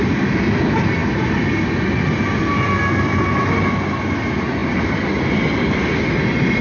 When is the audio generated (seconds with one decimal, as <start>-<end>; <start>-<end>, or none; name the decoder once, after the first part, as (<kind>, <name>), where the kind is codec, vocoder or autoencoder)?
none